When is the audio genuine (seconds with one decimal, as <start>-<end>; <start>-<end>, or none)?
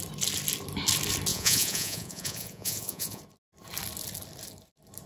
0.0-1.3; 3.2-5.1